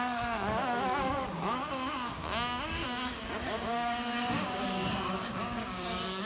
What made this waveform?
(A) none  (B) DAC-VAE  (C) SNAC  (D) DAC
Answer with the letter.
D